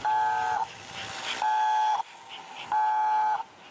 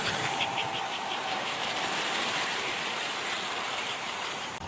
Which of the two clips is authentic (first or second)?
first